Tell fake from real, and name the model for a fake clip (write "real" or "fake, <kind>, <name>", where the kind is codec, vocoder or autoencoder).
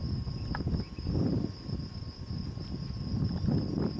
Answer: real